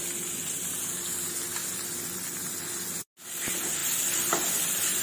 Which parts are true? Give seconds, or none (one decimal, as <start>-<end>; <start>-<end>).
0.0-5.0